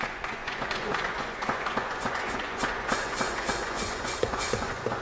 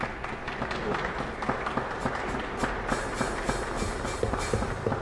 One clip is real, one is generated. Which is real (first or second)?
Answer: second